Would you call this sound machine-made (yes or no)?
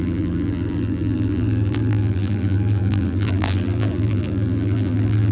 yes